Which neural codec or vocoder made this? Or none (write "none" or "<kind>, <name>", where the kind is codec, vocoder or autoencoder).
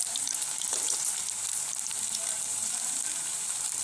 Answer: vocoder, BigVGAN v2